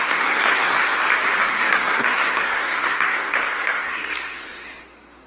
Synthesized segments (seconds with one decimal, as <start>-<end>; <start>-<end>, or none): 0.0-0.8; 1.4-5.3